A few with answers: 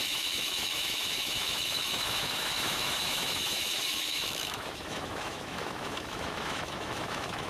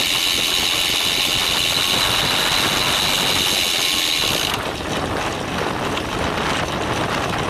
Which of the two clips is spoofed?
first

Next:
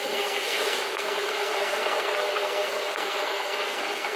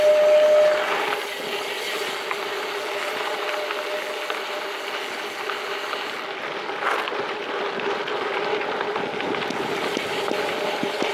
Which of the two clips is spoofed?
first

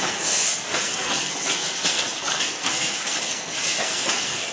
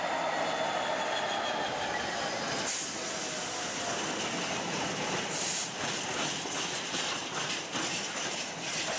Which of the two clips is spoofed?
first